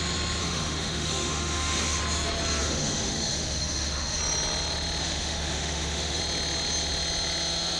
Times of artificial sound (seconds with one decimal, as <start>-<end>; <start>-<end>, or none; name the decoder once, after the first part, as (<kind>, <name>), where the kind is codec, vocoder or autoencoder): 0.4-2.0 (autoencoder, DAC-VAE); 2.6-4.2; 5.0-6.2